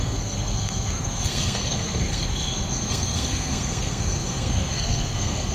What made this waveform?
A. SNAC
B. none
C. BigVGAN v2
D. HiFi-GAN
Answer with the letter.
A